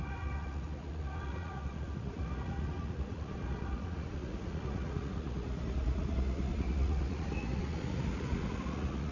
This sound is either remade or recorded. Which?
remade